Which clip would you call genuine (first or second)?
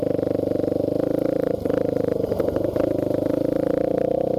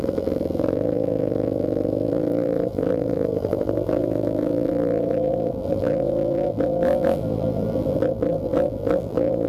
first